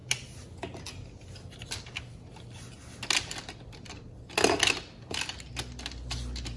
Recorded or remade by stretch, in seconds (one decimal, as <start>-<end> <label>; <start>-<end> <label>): 0.0-6.6 recorded